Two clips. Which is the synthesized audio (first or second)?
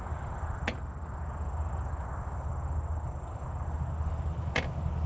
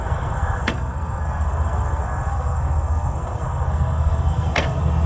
second